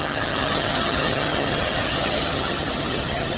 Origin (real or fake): fake